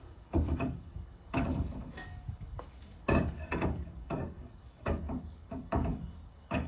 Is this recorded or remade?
remade